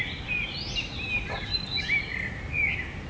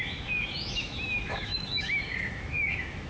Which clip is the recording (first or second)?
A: first